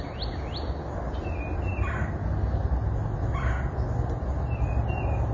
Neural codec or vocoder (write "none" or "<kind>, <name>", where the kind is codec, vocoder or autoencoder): none